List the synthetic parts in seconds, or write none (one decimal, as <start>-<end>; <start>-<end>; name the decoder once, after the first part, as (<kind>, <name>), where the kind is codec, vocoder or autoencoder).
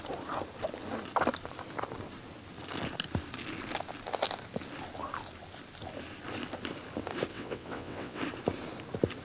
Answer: 7.3-8.2 (vocoder, WaveNeXt)